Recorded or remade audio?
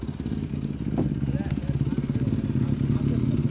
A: recorded